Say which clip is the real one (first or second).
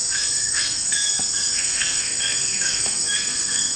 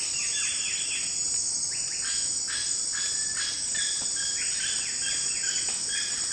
second